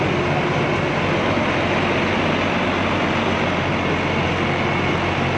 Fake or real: real